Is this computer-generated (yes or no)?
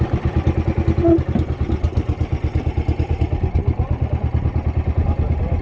no